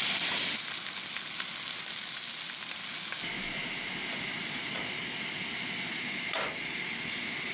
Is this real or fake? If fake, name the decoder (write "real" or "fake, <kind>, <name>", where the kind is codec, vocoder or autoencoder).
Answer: real